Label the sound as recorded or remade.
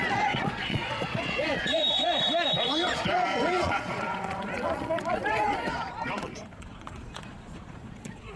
remade